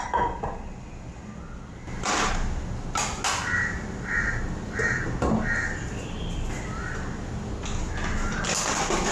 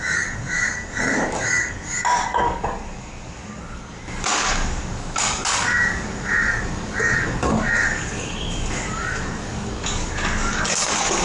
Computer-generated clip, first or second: second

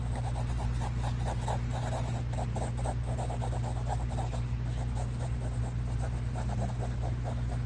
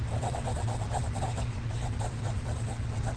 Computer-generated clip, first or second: second